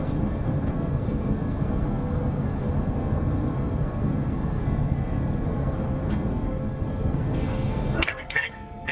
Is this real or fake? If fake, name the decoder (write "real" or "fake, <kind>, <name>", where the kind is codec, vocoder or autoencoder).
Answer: fake, codec, SNAC